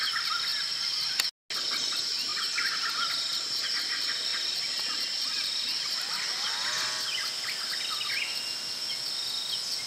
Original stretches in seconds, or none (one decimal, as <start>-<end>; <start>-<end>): 0.0-9.9